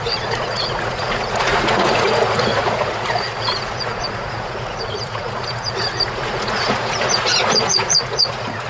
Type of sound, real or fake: fake